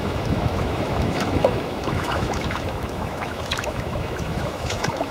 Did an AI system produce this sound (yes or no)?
yes